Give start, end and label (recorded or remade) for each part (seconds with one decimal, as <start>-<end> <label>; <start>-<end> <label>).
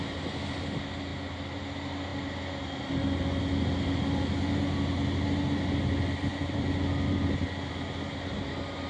0.0-1.1 recorded; 1.1-1.6 remade; 1.6-2.1 recorded; 2.1-2.9 remade; 2.9-6.3 recorded; 6.3-7.7 remade; 7.7-8.9 recorded